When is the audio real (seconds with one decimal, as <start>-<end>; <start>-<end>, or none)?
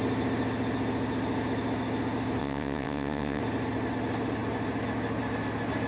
0.0-2.4; 3.4-5.9